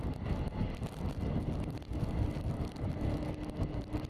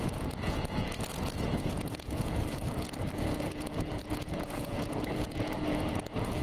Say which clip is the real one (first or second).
first